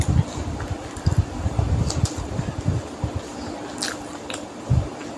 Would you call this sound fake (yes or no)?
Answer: no